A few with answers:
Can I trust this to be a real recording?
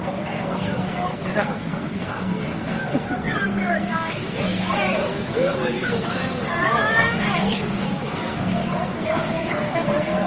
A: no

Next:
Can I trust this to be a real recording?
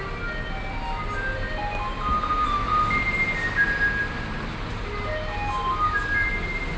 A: yes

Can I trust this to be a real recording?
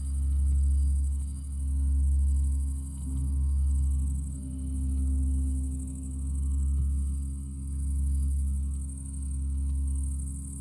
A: yes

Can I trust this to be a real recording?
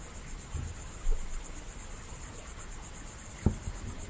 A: yes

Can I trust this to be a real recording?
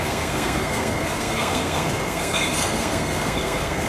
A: no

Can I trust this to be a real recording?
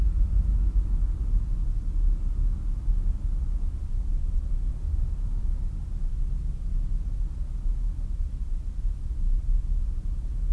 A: yes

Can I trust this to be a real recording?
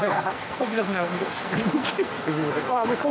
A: no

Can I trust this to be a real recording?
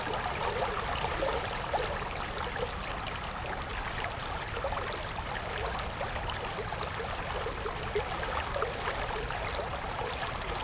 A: yes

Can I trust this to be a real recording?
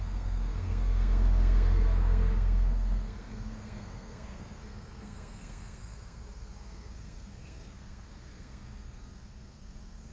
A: no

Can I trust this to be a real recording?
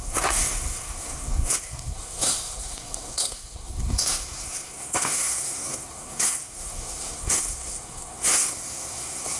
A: no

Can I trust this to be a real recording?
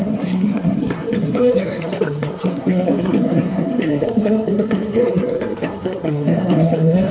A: no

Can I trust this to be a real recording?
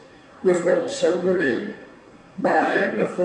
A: no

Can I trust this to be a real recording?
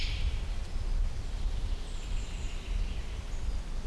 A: yes